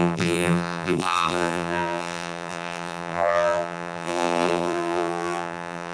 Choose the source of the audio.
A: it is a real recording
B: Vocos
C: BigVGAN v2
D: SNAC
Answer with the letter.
C